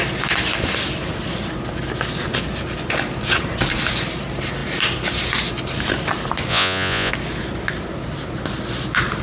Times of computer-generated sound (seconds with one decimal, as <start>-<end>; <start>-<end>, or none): 6.5-7.1